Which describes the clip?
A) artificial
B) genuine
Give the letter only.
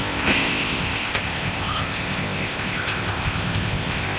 A